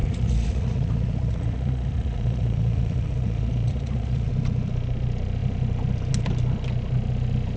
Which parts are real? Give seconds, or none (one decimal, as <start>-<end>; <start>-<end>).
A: 4.3-7.6